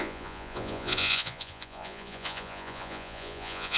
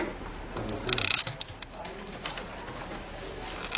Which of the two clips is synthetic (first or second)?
first